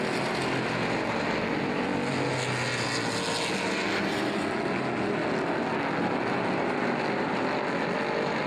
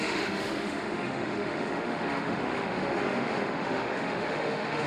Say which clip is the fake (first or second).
second